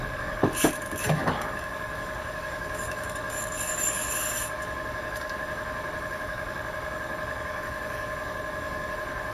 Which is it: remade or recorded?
remade